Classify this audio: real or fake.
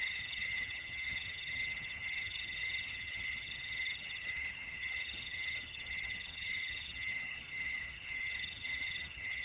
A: fake